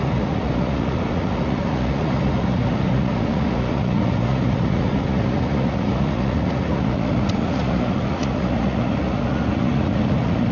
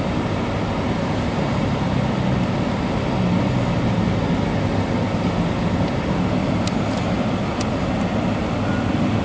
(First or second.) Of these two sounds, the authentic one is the second